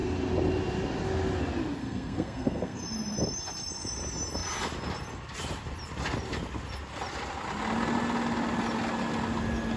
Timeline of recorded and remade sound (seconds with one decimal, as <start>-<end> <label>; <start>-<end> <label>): 0.0-1.8 recorded; 1.8-2.8 remade; 2.8-9.8 recorded